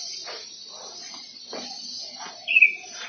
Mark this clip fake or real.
real